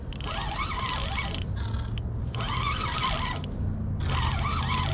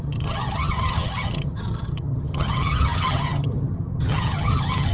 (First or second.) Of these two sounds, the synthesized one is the second